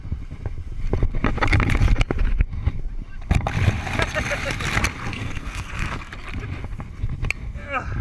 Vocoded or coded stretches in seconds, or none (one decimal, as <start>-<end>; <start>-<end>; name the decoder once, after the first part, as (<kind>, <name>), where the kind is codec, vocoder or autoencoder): 5.1-6.1 (codec, SNAC)